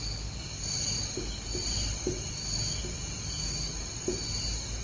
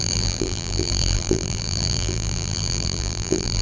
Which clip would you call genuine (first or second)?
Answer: first